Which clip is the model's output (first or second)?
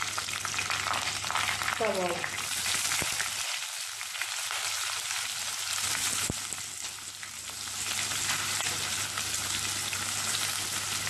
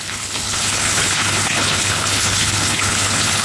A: second